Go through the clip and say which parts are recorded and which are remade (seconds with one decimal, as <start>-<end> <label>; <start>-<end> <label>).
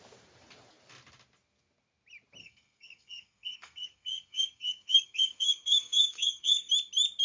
0.0-2.4 recorded; 2.4-6.7 remade; 6.7-7.2 recorded